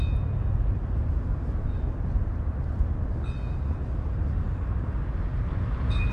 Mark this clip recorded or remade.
recorded